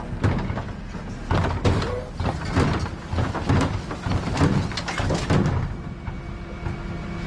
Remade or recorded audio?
recorded